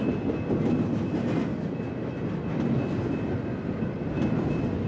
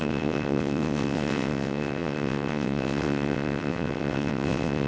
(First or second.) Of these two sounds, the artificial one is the second